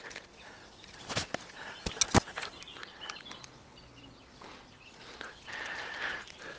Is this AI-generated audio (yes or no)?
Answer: no